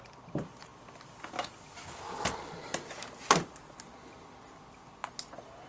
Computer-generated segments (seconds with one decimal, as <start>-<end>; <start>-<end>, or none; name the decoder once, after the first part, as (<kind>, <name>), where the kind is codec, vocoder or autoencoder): none